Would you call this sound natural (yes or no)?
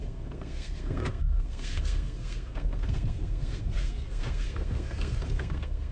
no